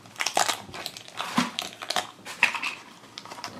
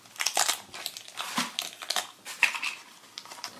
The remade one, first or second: first